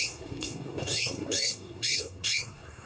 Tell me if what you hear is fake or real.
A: fake